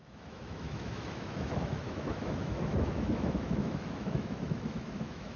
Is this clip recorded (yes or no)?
no